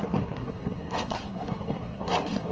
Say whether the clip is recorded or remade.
remade